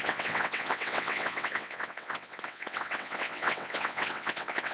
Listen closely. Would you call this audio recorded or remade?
remade